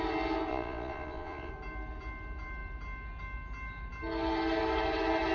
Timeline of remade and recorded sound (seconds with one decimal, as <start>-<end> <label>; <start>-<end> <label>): 0.0-0.5 recorded; 0.5-1.5 remade; 1.5-5.3 recorded